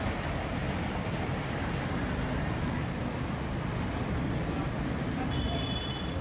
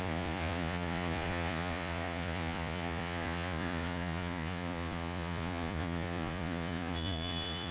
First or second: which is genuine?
first